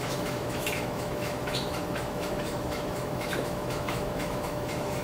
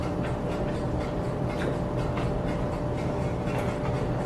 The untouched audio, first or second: second